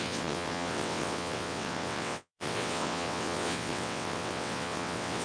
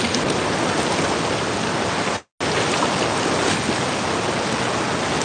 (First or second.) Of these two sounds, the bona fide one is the second